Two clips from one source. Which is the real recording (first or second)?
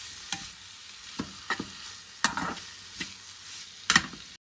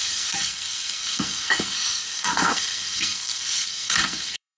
first